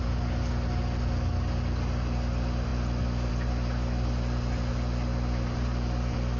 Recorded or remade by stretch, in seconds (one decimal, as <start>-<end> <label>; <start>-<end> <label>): 0.0-6.4 recorded